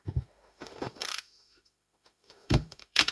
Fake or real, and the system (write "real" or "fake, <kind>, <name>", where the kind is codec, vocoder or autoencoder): fake, autoencoder, DAC-VAE